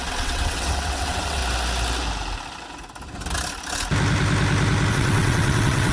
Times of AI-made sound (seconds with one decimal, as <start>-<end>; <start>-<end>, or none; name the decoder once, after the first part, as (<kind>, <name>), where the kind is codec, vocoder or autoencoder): 0.0-1.4 (vocoder, WaveNeXt); 4.9-5.9